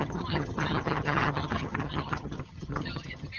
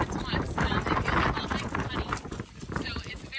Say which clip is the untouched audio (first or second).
second